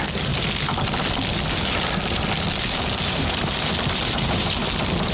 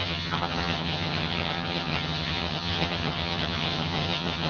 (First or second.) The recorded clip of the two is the first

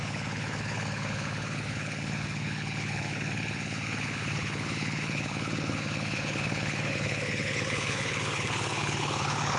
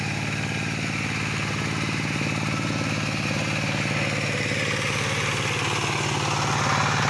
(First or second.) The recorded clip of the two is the second